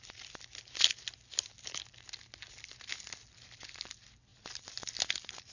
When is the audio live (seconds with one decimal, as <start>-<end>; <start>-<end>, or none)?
0.0-5.5